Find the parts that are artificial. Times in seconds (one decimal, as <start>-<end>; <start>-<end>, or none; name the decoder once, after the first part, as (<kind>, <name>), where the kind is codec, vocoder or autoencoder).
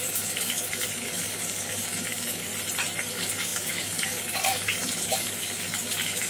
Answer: 0.0-2.5 (codec, DAC); 3.1-6.3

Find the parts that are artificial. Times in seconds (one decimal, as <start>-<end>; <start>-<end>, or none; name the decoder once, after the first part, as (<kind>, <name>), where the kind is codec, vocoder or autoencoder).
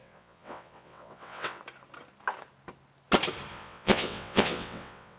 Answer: 0.0-1.6 (vocoder, WaveNeXt); 3.5-5.2